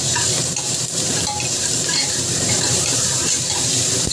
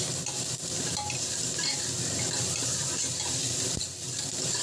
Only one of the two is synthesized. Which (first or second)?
first